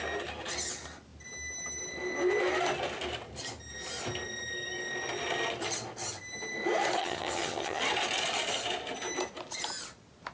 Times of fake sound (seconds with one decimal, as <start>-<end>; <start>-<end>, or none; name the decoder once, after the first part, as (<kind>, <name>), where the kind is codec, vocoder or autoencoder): 7.0-7.8 (vocoder, HiFi-GAN)